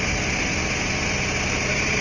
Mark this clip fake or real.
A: real